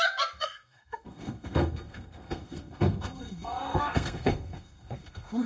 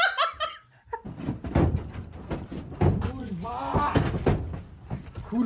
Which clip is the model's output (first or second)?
first